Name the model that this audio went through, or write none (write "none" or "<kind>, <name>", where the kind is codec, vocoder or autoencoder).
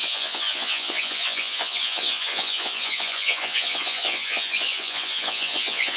vocoder, Vocos